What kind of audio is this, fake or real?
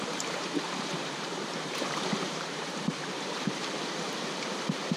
fake